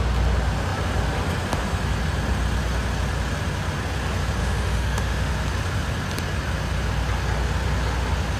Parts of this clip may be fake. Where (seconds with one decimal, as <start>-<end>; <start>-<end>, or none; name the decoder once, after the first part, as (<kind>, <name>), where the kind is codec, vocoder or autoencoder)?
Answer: 4.4-5.3 (autoencoder, DAC-VAE)